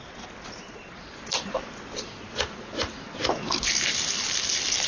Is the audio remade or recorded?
remade